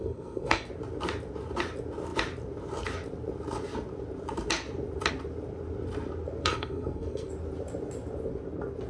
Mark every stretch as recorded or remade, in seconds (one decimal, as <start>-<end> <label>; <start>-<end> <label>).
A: 0.0-0.7 remade; 0.7-6.4 recorded; 6.4-7.3 remade; 7.3-8.9 recorded